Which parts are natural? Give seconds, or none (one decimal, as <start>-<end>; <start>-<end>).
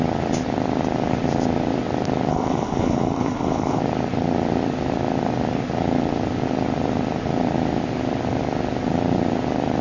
0.0-2.3; 3.8-9.8